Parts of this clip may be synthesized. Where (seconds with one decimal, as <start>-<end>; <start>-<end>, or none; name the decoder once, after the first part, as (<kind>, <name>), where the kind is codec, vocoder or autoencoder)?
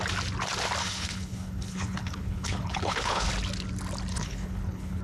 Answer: 0.8-3.3 (codec, HILCodec); 4.1-5.0